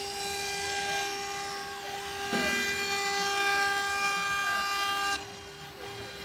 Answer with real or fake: real